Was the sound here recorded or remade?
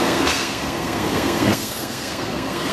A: remade